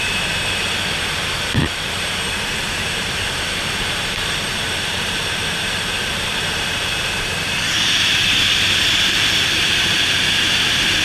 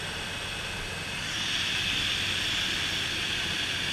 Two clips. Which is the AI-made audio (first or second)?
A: first